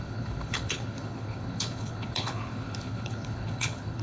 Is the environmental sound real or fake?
fake